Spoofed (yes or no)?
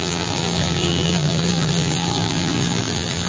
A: yes